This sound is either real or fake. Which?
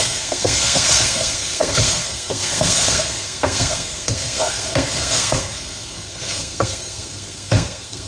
fake